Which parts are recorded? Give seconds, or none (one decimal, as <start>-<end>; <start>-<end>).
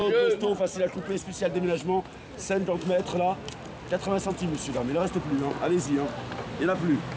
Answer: 0.0-7.2